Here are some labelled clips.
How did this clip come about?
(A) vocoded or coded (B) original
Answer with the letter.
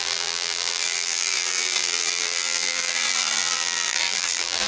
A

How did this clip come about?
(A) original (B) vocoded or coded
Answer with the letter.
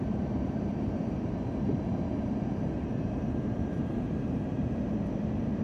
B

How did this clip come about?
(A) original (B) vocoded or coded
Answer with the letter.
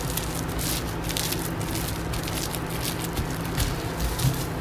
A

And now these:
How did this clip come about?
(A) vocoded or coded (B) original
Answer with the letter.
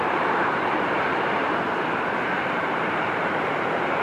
A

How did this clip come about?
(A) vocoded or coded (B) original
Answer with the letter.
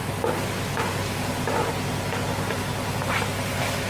A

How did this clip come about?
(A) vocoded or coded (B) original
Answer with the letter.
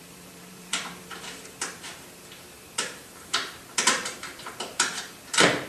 A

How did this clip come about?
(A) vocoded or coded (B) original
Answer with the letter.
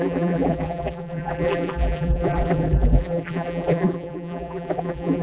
A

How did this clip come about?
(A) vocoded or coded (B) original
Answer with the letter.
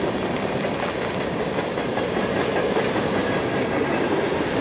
B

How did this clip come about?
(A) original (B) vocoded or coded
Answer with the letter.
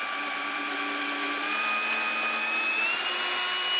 A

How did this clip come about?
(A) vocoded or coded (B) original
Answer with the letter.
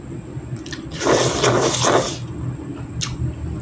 B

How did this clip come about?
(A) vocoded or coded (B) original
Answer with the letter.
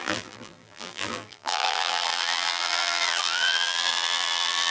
A